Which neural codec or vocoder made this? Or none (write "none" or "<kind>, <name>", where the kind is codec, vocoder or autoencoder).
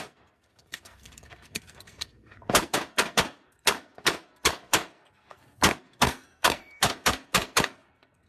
codec, SNAC